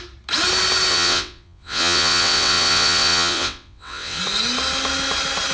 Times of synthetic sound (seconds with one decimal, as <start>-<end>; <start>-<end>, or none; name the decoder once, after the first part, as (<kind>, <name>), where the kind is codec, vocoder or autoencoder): 0.9-4.2 (vocoder, WaveNeXt)